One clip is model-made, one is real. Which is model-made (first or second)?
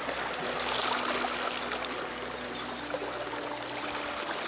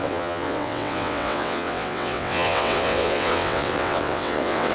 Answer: second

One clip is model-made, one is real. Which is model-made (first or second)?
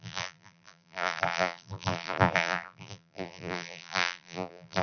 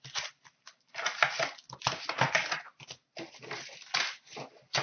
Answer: first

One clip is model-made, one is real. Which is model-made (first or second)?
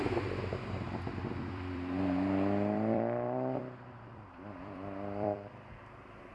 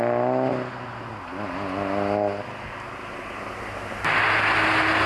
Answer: first